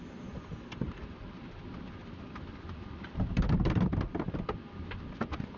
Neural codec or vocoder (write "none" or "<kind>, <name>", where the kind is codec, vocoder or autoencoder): none